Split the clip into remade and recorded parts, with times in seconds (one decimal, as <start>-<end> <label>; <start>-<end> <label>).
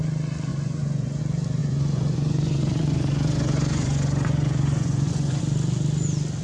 0.0-0.5 recorded; 0.5-1.2 remade; 1.2-1.6 recorded; 1.6-5.4 remade; 5.4-6.4 recorded